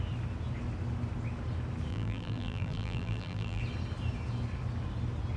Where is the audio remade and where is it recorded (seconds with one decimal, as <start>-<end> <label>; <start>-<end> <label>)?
0.0-1.9 recorded; 1.9-3.6 remade; 3.6-5.4 recorded